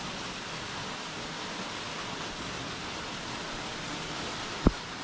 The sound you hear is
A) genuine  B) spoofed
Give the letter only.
A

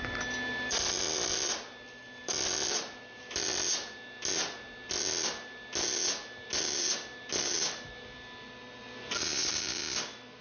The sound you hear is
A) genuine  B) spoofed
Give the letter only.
A